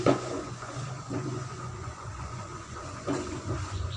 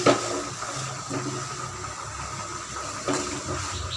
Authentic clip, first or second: second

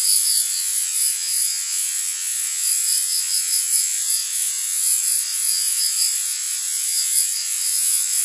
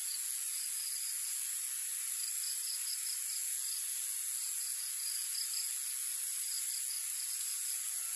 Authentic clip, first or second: second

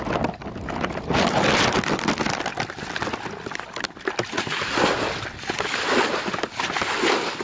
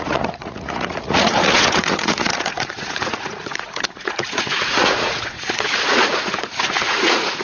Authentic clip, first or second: first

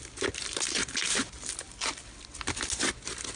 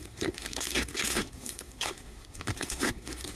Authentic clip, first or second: first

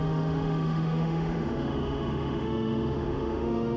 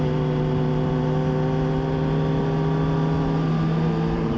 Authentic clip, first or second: second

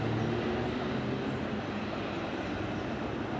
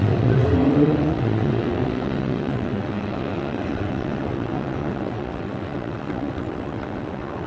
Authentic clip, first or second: first